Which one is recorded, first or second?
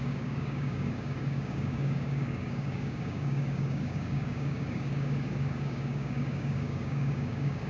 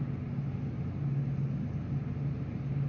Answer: second